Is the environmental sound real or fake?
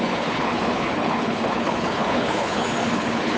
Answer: fake